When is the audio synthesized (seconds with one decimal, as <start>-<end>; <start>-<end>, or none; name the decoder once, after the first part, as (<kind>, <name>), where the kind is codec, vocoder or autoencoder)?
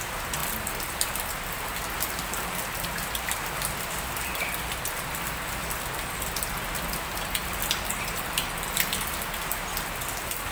none